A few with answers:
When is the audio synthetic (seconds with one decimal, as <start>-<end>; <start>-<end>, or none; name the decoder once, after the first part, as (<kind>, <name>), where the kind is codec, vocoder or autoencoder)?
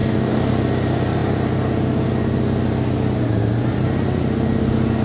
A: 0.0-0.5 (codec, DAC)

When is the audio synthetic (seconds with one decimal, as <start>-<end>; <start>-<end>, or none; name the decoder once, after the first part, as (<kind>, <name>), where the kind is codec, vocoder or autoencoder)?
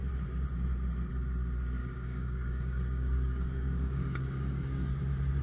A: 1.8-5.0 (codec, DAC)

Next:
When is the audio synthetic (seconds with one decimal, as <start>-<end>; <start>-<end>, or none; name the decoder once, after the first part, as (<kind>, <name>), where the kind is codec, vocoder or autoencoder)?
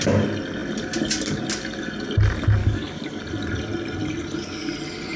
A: 2.6-3.2 (codec, DAC)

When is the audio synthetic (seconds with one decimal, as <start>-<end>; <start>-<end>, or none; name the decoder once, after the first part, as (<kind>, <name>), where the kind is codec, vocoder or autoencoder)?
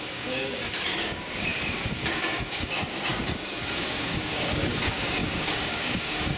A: 0.0-6.4 (codec, DAC)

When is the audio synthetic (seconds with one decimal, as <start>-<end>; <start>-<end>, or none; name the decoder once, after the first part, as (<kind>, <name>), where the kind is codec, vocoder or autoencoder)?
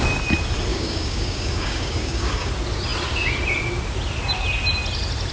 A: 0.7-2.5 (codec, DAC)